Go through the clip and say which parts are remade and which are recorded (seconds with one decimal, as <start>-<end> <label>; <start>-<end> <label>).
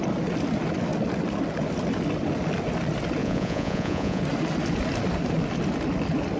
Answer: 0.0-3.2 recorded; 3.2-4.2 remade; 4.2-6.4 recorded